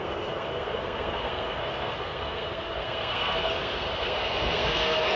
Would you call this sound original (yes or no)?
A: no